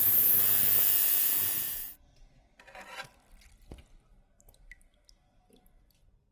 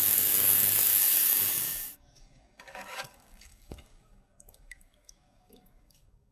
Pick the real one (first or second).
first